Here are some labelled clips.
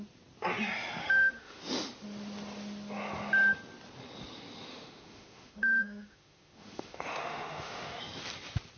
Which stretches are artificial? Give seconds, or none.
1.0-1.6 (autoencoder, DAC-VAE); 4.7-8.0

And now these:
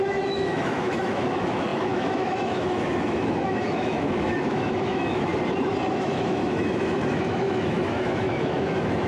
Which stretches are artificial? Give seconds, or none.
0.0-5.3 (autoencoder, DAC-VAE); 5.9-9.1

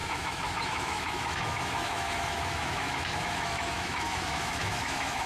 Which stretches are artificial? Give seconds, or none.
0.0-5.3 (autoencoder, DAC-VAE)

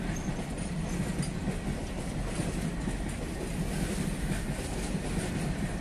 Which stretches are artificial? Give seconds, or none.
none

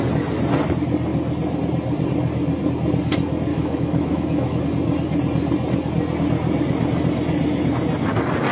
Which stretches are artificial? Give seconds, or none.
3.5-4.6 (autoencoder, DAC-VAE)

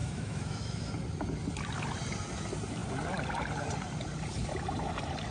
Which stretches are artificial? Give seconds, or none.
0.0-0.9 (autoencoder, DAC-VAE)